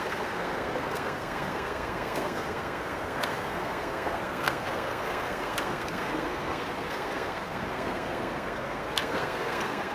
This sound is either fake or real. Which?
fake